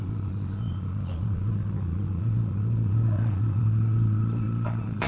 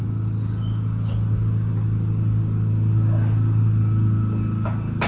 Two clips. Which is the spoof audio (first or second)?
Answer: first